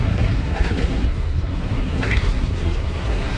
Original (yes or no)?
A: no